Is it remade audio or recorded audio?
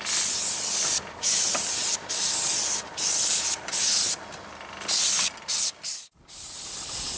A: recorded